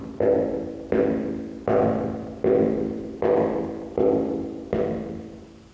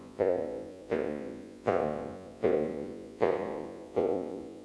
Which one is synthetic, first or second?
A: second